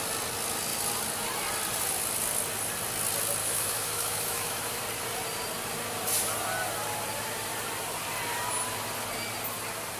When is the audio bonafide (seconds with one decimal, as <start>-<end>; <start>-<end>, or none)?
0.0-3.4; 4.8-10.0